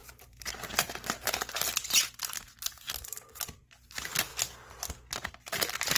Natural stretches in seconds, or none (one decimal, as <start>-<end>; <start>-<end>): 4.3-5.1